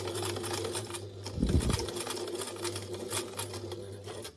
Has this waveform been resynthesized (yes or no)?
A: no